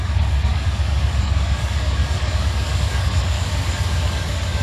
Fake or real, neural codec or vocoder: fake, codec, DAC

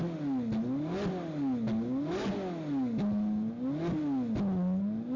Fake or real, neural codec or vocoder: real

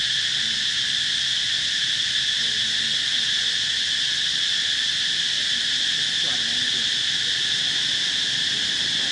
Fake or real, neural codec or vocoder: real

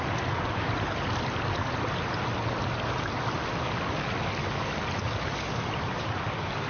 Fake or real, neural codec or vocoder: real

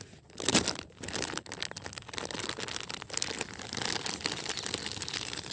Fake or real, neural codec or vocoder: real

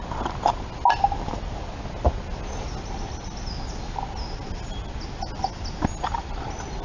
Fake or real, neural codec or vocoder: real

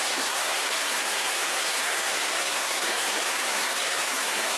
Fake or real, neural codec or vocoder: fake, codec, SNAC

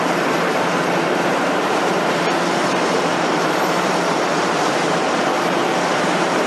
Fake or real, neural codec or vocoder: fake, vocoder, BigVGAN v2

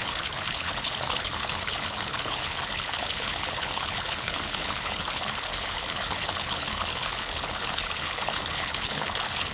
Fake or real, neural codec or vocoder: fake, codec, HILCodec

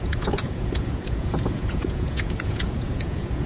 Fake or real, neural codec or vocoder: fake, vocoder, Vocos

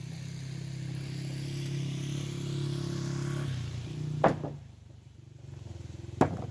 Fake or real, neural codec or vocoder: real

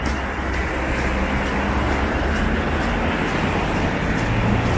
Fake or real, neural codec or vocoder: real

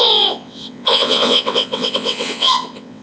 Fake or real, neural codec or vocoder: fake, vocoder, WaveNeXt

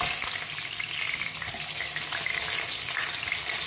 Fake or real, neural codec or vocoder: real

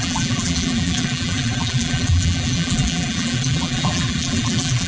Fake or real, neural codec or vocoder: fake, vocoder, BigVGAN v2